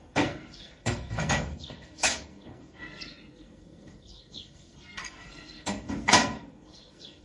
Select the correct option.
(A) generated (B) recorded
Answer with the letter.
A